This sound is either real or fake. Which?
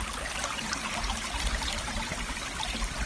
real